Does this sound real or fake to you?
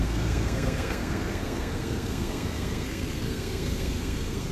fake